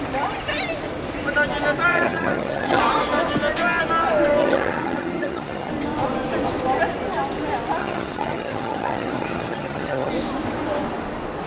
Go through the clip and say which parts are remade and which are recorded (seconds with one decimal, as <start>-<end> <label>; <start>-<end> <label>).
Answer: 0.0-1.9 recorded; 1.9-2.8 remade; 2.8-4.4 recorded; 4.4-5.7 remade; 5.7-7.8 recorded; 7.8-10.1 remade; 10.1-11.5 recorded